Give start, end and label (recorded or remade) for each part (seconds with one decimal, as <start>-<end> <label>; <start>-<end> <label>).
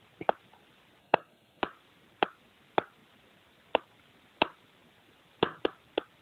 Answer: 0.0-1.0 recorded; 1.0-1.6 remade; 1.6-6.2 recorded